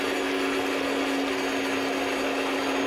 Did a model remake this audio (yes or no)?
no